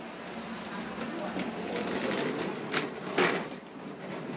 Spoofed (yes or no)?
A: no